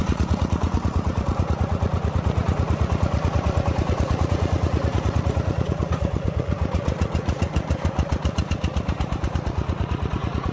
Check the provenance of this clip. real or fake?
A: fake